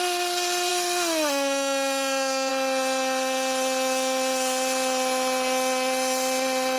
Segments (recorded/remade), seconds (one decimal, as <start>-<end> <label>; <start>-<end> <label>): 0.0-0.7 recorded; 0.7-2.5 remade; 2.5-6.8 recorded